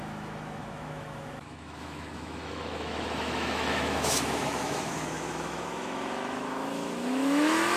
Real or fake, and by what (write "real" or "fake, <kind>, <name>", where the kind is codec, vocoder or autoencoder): fake, autoencoder, DAC-VAE